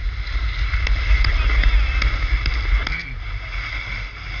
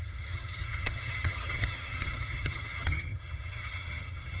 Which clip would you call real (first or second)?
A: first